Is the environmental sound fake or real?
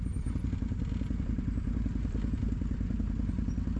real